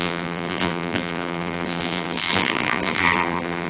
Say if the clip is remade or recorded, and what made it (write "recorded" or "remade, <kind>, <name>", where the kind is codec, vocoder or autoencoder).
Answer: remade, vocoder, BigVGAN v2